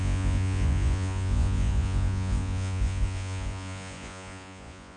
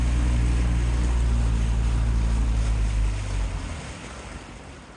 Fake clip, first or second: first